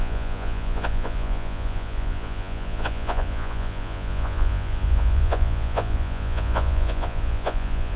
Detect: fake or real fake